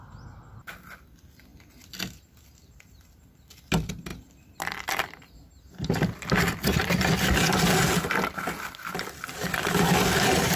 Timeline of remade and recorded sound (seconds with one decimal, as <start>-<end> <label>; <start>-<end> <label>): 0.0-10.6 recorded